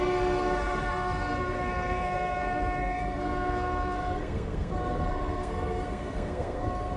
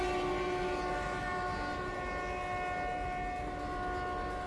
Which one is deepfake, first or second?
first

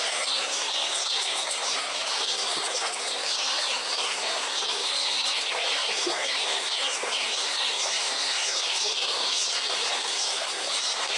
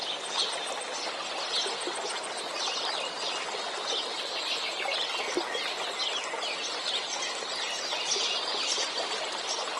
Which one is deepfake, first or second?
first